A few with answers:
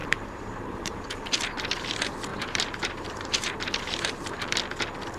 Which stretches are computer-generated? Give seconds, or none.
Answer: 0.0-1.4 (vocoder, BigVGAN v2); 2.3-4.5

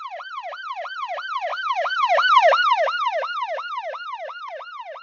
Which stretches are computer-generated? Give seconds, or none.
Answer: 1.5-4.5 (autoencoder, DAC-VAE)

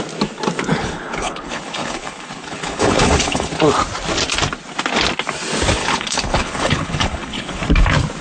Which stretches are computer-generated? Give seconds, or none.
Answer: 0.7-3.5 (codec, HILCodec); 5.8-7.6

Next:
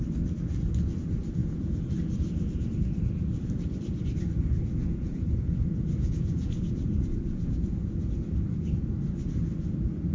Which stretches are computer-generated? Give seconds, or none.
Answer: 1.4-2.0 (vocoder, Vocos); 4.8-8.0

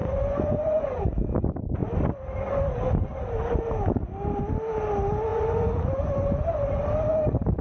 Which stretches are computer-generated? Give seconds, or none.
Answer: 0.0-1.0 (vocoder, Vocos); 5.3-6.3

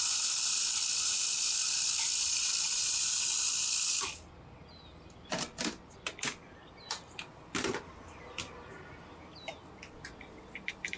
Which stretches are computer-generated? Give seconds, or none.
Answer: none

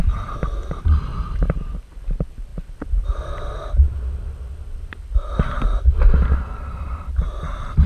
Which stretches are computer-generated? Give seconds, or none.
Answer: none

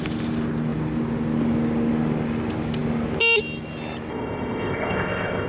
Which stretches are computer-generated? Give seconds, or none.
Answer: 4.1-5.5 (codec, ZipCodec)